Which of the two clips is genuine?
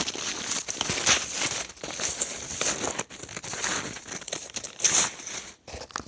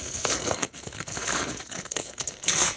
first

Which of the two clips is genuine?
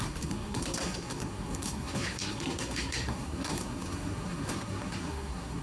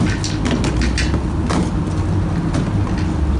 second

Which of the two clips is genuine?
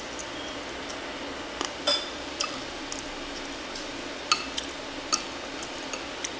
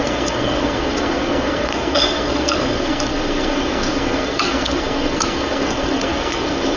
first